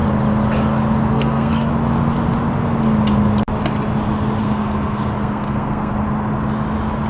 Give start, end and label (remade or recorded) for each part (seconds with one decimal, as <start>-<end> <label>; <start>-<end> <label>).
0.0-1.1 recorded; 1.1-1.7 remade; 1.7-4.4 recorded; 4.4-5.9 remade; 5.9-7.1 recorded